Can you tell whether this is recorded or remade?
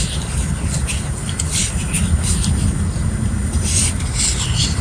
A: recorded